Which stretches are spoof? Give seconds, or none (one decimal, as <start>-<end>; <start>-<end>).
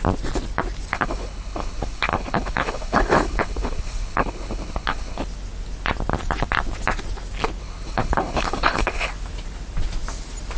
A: 0.9-5.2; 7.6-9.1